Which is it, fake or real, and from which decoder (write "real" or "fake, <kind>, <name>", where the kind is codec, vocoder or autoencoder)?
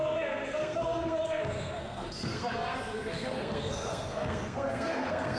fake, codec, SNAC